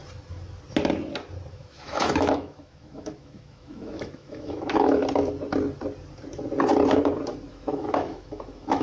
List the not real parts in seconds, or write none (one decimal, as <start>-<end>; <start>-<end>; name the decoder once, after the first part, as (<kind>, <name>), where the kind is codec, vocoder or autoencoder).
1.5-5.0 (autoencoder, DAC-VAE); 7.5-8.8